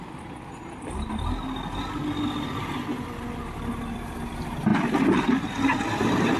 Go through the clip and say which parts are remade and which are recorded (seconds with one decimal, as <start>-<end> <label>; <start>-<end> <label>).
0.0-6.4 recorded